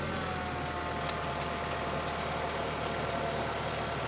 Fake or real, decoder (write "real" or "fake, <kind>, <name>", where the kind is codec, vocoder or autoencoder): real